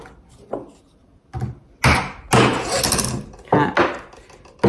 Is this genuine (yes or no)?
yes